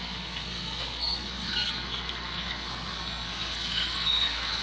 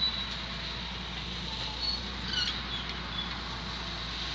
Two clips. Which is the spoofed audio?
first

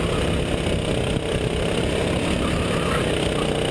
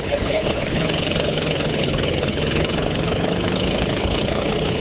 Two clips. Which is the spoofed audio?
second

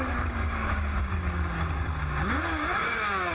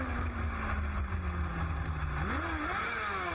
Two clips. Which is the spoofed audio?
first